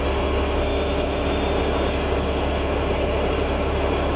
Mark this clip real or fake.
real